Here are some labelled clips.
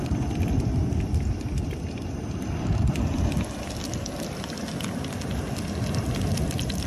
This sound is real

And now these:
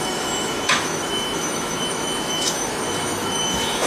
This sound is fake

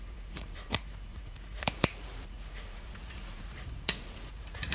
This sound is fake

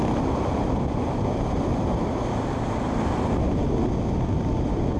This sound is real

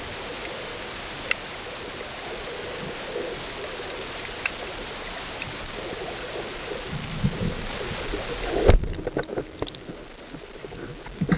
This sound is real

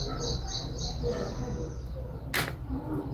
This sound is real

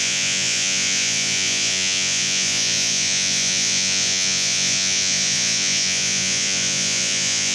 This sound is fake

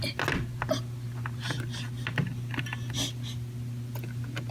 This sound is real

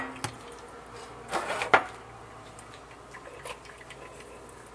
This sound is real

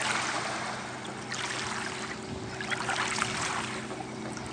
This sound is real